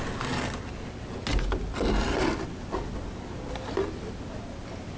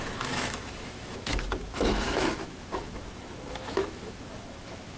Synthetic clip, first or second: second